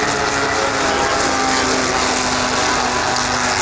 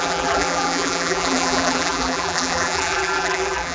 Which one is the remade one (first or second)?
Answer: second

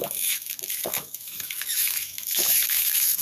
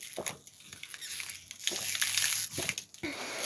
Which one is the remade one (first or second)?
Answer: first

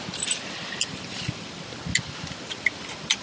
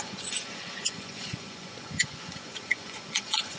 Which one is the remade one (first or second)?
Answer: second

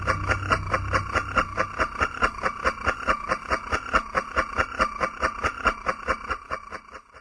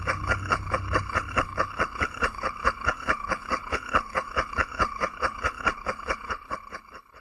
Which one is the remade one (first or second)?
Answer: second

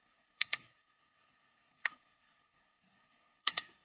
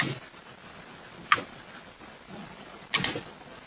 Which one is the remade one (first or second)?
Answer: first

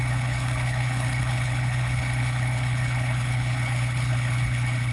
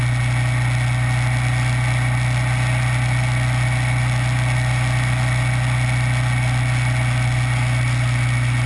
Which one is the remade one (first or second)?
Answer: first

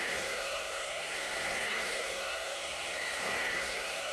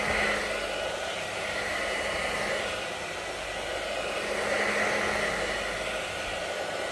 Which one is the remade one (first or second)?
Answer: first